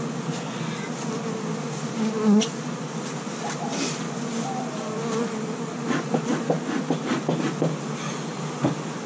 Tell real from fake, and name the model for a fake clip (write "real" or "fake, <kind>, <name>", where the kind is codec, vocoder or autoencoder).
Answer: real